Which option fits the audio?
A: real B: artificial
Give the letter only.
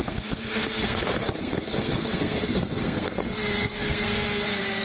B